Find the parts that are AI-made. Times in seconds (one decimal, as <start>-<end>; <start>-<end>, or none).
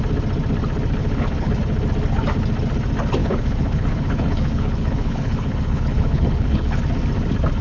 1.0-1.6; 3.2-6.8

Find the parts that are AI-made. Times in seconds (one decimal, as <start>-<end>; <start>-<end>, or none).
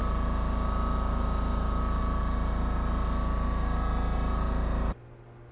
none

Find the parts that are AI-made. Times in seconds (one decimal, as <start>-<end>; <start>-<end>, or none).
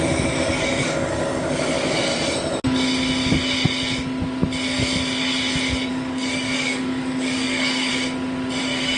0.0-2.1; 5.9-7.9; 8.6-9.0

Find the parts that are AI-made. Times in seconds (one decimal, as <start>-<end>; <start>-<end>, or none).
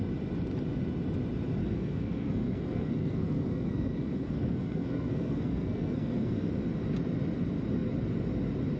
1.6-6.5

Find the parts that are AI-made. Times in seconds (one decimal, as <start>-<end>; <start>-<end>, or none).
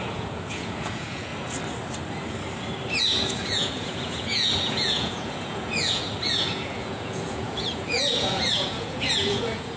0.0-1.3; 3.0-9.8